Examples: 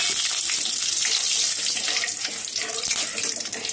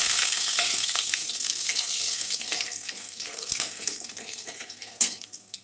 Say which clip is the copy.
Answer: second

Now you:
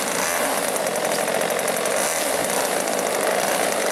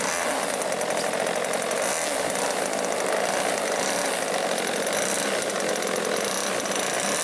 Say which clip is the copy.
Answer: first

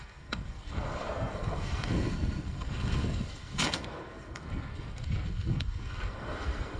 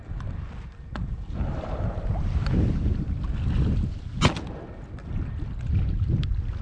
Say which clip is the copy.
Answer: first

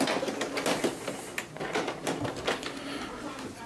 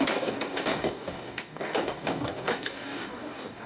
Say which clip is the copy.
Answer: second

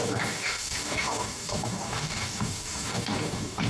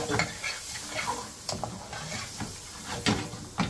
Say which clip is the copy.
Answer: first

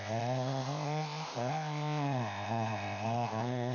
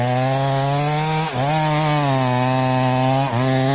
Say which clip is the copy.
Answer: first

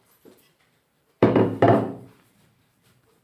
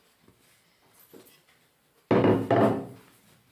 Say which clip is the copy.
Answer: first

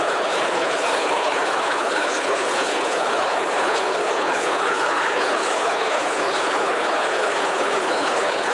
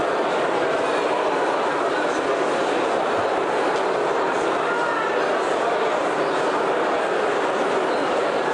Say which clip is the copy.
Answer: first